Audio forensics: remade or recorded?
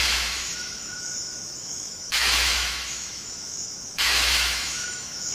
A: remade